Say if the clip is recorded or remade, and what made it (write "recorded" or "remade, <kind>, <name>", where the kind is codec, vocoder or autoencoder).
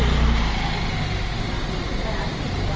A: recorded